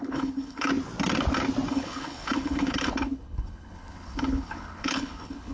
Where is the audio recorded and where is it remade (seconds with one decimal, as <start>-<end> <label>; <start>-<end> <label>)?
0.0-0.7 remade; 0.7-1.7 recorded; 1.7-5.5 remade